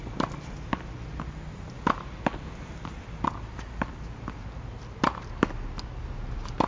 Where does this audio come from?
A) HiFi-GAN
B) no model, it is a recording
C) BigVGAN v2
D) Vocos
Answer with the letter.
B